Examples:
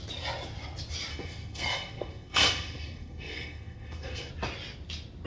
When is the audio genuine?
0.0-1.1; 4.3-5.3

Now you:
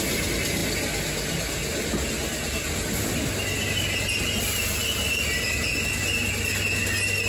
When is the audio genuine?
0.0-7.3

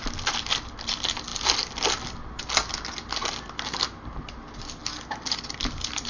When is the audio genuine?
0.0-6.1

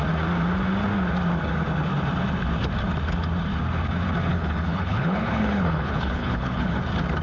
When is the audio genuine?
0.0-4.3; 6.8-7.2